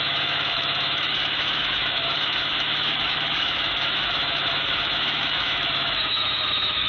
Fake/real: fake